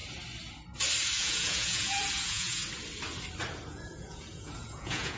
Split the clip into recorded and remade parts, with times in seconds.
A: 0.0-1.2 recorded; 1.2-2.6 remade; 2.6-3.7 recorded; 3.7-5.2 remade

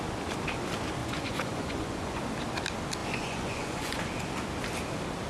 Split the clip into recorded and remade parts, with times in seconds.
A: 0.0-1.0 recorded; 1.0-2.2 remade; 2.2-3.0 recorded; 3.0-4.0 remade; 4.0-5.3 recorded

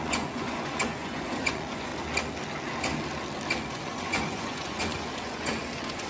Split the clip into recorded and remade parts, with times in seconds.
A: 0.0-1.9 remade; 1.9-3.7 recorded; 3.7-6.1 remade

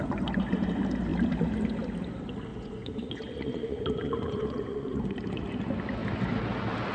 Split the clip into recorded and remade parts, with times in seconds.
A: 0.0-2.5 recorded; 2.5-5.1 remade; 5.1-6.9 recorded

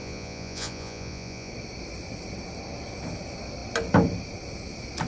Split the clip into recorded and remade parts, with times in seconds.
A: 0.0-1.5 remade; 1.5-5.1 recorded

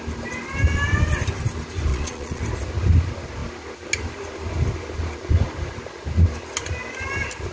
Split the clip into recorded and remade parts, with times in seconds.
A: 0.0-1.9 recorded; 1.9-2.4 remade; 2.4-7.5 recorded